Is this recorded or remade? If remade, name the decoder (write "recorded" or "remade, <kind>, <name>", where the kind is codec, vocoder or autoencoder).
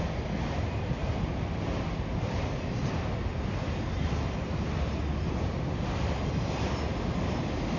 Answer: recorded